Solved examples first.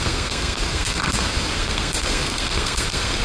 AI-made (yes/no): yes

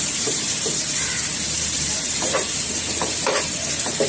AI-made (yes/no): yes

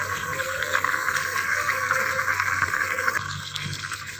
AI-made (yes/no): yes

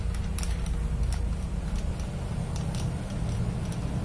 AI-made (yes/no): no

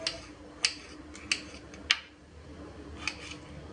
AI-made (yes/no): no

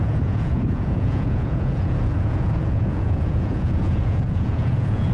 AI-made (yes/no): yes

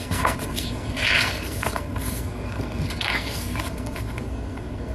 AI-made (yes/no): yes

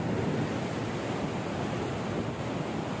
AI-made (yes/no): no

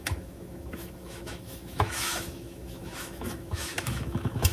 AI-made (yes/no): yes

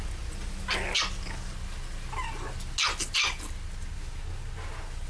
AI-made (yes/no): no